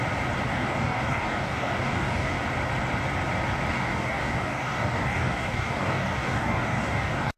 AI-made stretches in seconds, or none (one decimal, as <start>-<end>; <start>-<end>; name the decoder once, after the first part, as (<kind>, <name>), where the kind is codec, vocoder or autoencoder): 0.5-2.4 (codec, DAC); 3.7-7.4